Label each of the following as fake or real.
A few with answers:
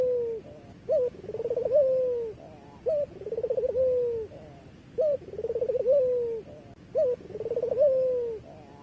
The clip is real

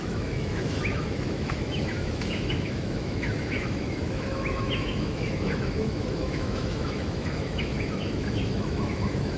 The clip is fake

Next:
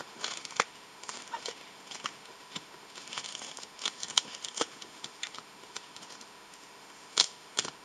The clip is fake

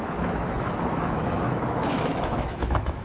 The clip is fake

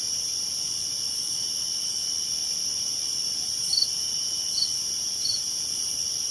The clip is real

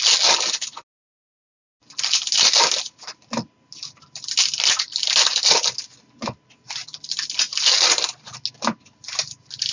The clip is real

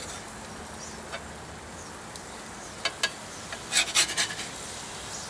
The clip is real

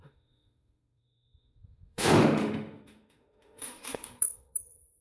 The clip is fake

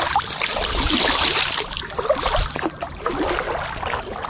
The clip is real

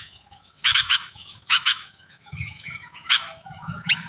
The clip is fake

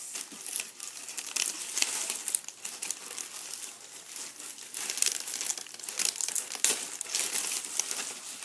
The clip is real